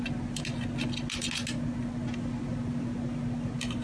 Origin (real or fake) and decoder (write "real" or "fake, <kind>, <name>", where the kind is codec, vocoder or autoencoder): real